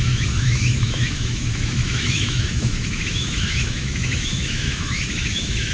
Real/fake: fake